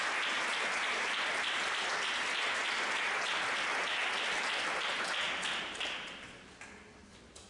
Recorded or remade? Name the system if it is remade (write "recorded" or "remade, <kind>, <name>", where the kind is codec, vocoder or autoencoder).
recorded